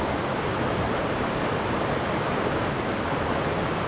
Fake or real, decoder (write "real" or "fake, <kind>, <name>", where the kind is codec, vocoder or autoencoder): real